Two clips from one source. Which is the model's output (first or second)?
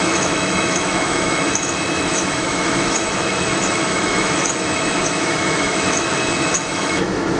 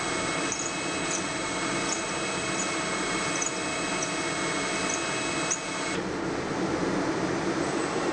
first